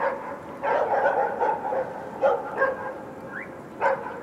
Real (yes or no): yes